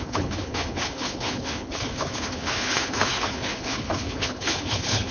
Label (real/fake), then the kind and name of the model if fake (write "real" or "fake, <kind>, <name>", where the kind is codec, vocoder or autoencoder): fake, codec, HILCodec